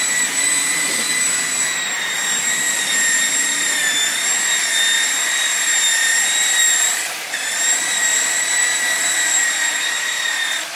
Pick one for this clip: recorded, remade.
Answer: remade